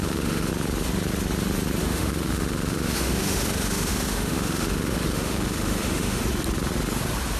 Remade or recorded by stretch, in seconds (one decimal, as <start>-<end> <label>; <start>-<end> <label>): 0.0-0.5 remade; 0.5-1.8 recorded; 1.8-6.2 remade; 6.2-7.4 recorded